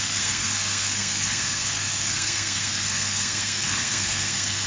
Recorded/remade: remade